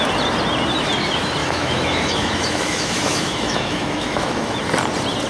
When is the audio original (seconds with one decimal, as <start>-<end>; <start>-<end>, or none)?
0.0-1.4; 4.6-5.3